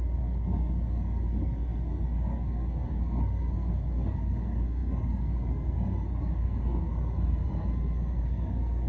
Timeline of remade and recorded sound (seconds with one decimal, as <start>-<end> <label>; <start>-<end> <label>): 0.0-8.9 remade